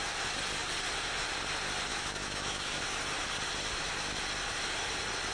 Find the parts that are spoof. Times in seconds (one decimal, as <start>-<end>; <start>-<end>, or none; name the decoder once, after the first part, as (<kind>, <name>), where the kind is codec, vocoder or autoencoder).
1.9-2.8 (autoencoder, DAC-VAE)